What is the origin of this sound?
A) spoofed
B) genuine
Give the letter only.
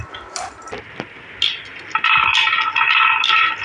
B